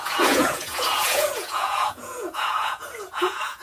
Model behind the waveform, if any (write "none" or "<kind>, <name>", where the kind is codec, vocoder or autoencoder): vocoder, Vocos